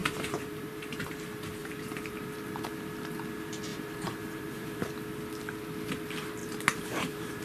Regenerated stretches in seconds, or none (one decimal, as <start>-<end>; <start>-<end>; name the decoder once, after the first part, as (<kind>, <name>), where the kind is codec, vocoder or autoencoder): 0.0-1.1 (vocoder, BigVGAN v2); 1.6-2.1; 3.7-4.9; 6.4-7.4